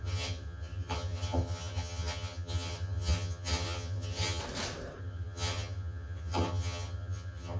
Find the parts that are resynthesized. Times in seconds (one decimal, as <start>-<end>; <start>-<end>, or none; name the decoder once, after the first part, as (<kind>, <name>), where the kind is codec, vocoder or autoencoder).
0.0-4.4 (vocoder, HiFi-GAN); 5.0-7.6